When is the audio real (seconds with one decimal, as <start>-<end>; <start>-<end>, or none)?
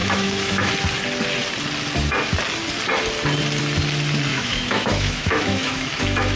0.7-4.3